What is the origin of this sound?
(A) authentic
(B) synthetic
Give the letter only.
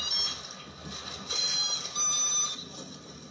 A